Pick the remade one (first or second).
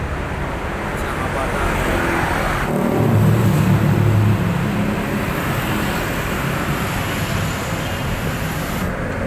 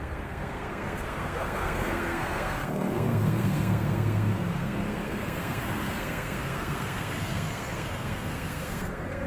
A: second